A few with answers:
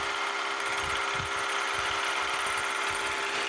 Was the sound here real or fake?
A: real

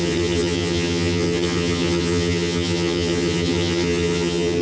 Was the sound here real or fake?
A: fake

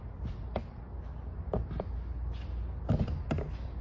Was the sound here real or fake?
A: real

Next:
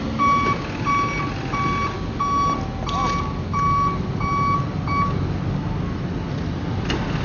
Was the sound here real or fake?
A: real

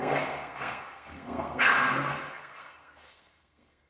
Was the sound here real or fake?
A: fake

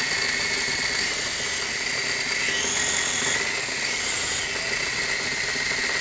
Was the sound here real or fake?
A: real